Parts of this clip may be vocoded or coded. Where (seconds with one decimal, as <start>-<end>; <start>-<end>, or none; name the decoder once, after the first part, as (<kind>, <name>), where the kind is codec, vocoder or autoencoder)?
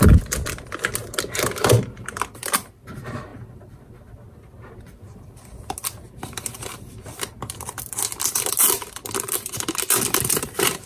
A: none